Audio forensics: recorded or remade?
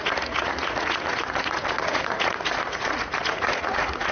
remade